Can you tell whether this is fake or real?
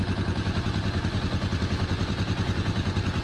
fake